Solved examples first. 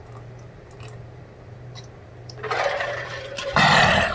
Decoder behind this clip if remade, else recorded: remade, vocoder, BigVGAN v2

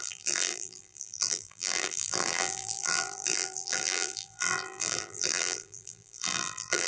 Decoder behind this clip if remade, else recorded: remade, vocoder, BigVGAN v2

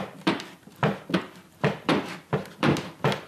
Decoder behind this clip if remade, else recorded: remade, vocoder, BigVGAN v2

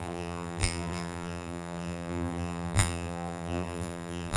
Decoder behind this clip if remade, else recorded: remade, vocoder, BigVGAN v2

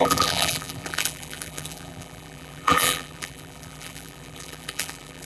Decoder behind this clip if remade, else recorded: remade, vocoder, BigVGAN v2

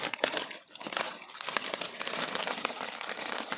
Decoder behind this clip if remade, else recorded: remade, vocoder, BigVGAN v2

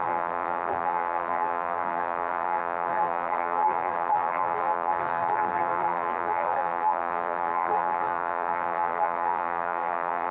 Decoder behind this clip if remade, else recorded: remade, vocoder, BigVGAN v2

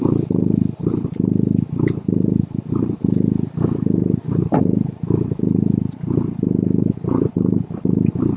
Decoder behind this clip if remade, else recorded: remade, vocoder, BigVGAN v2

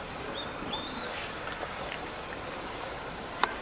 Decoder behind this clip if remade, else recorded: remade, vocoder, BigVGAN v2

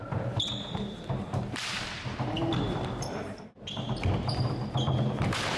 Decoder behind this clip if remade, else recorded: remade, vocoder, BigVGAN v2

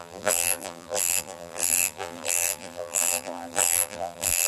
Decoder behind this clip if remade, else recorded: remade, vocoder, BigVGAN v2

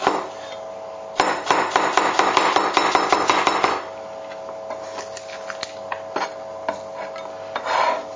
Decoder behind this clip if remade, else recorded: recorded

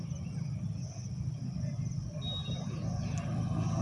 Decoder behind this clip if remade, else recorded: remade, vocoder, BigVGAN v2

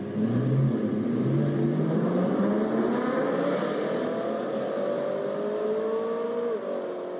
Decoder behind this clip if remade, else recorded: recorded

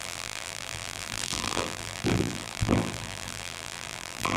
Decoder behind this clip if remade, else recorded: remade, vocoder, BigVGAN v2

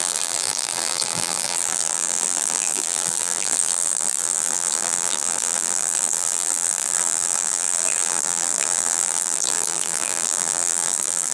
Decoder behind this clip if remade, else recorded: remade, vocoder, BigVGAN v2